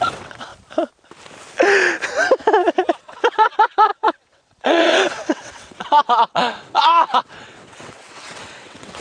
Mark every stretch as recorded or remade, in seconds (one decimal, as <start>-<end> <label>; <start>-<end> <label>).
0.0-0.5 remade; 0.5-3.0 recorded; 3.0-9.0 remade